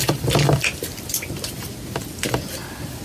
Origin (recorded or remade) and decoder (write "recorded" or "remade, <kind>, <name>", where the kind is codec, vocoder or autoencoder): recorded